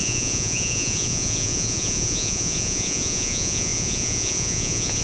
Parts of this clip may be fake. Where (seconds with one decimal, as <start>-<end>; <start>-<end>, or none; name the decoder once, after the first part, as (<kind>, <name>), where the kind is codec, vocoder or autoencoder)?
0.0-5.0 (vocoder, Vocos)